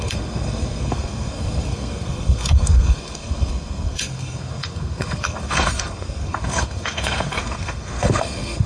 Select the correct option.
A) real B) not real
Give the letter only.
B